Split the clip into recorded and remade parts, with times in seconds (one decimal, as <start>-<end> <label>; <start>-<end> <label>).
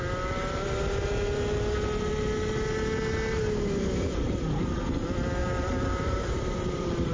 0.0-5.4 recorded; 5.4-7.1 remade